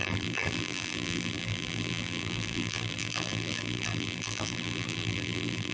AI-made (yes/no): yes